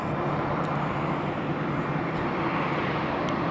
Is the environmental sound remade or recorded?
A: recorded